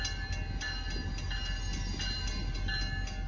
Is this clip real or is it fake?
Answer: real